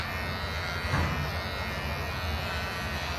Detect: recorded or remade recorded